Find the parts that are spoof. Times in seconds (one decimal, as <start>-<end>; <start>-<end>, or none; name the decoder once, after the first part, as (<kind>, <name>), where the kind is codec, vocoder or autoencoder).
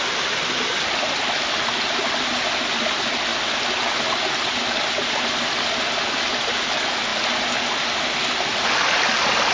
none